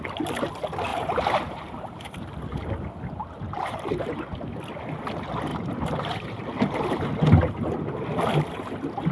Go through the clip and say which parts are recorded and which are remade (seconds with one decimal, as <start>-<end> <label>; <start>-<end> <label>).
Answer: 0.0-0.9 recorded; 0.9-2.3 remade; 2.3-3.2 recorded; 3.2-4.2 remade; 4.2-5.5 recorded; 5.5-6.4 remade; 6.4-9.1 recorded